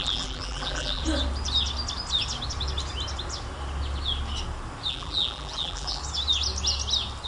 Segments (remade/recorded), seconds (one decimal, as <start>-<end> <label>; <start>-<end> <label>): 0.0-1.0 remade; 1.0-4.9 recorded; 4.9-6.0 remade; 6.0-7.3 recorded